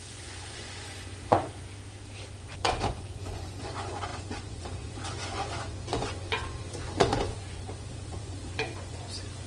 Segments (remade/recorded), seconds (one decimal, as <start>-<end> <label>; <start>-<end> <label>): 0.0-1.7 remade; 1.7-2.4 recorded; 2.4-9.5 remade